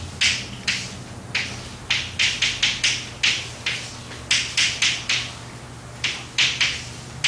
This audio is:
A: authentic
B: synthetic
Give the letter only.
A